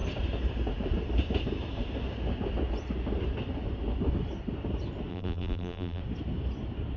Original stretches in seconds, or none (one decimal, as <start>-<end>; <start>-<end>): 0.0-5.1; 6.0-7.0